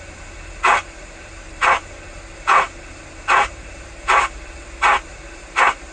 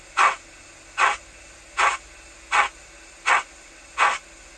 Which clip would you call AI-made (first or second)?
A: first